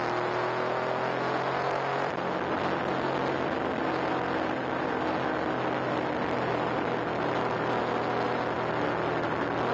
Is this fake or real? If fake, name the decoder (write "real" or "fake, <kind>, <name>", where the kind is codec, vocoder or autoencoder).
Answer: real